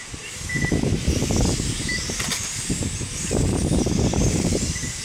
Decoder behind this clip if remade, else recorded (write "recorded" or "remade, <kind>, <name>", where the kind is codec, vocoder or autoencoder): remade, vocoder, BigVGAN v2